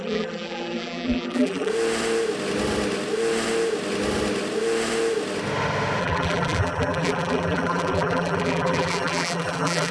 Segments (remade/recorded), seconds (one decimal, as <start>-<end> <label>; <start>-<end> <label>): 0.0-1.7 remade; 1.7-6.0 recorded; 6.0-9.9 remade